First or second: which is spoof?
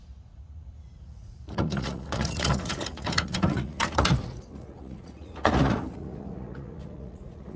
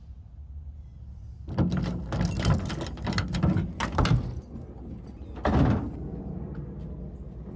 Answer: first